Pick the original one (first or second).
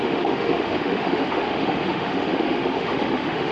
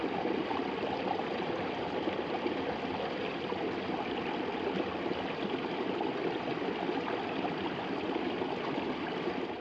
second